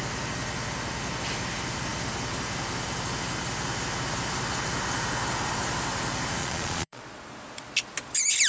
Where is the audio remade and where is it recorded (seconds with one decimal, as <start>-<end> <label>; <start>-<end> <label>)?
0.0-6.4 recorded; 6.4-7.0 remade; 7.0-8.5 recorded